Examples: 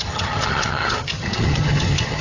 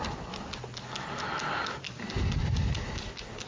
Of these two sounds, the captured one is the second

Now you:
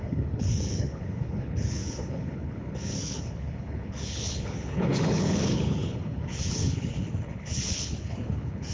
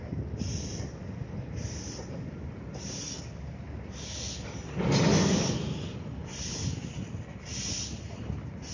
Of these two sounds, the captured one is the second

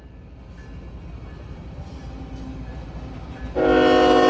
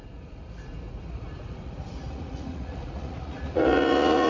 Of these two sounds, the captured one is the first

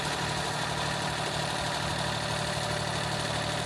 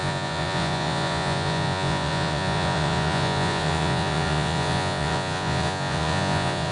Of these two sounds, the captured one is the first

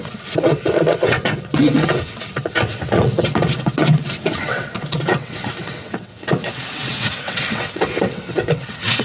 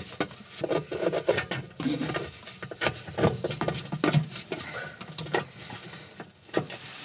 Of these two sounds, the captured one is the second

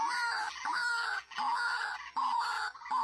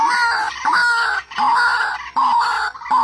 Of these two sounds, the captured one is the second